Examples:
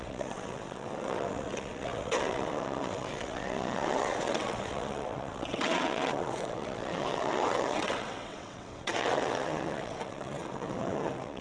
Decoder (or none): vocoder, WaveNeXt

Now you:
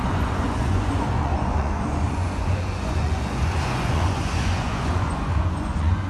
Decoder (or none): vocoder, Vocos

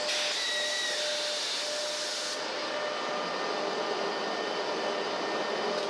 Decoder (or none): none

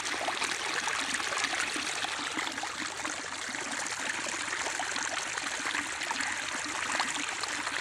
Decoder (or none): none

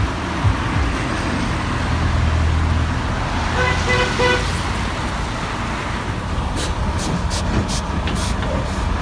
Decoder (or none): none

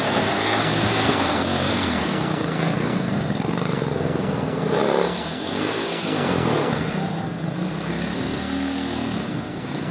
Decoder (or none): codec, SNAC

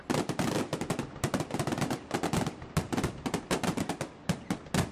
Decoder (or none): none